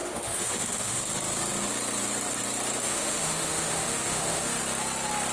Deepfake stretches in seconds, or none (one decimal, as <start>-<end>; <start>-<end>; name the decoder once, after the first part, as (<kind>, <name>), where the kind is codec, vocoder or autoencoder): 0.0-1.0 (autoencoder, DAC-VAE); 2.8-4.6